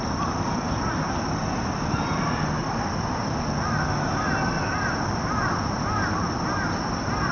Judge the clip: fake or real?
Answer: real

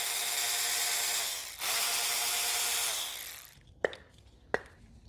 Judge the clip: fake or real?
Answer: real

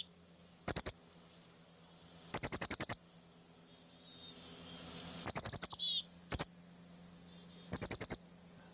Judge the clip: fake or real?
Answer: real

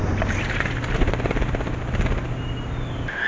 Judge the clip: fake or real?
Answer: real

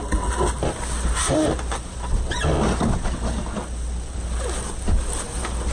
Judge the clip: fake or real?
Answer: real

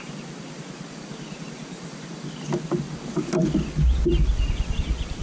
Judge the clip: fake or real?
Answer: real